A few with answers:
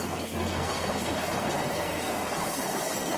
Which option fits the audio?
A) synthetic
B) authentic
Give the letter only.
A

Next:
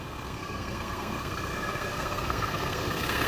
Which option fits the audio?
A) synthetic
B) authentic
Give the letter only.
A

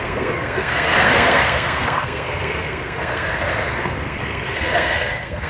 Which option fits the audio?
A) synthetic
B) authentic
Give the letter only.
A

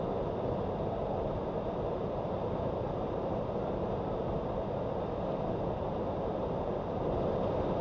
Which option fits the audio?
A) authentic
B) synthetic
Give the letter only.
A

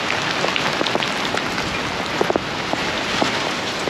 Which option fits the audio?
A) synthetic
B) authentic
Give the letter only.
B